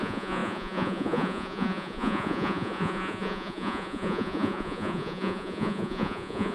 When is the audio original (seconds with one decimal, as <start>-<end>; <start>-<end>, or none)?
none